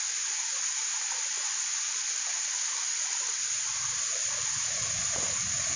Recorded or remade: recorded